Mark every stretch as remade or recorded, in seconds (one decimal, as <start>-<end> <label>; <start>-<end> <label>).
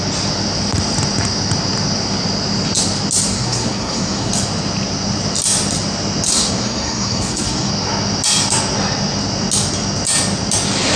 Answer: 0.0-3.3 recorded; 3.3-4.3 remade; 4.3-6.3 recorded; 6.3-7.7 remade; 7.7-11.0 recorded